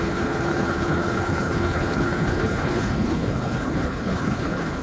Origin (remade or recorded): remade